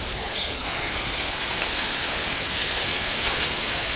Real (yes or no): no